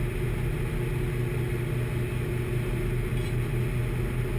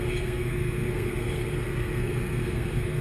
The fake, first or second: second